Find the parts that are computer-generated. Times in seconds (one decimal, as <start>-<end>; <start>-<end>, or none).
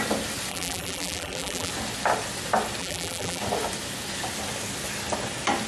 0.5-1.7; 2.8-3.4